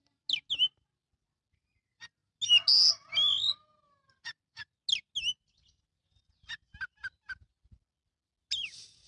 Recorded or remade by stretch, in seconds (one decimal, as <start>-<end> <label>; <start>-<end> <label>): 0.0-9.1 recorded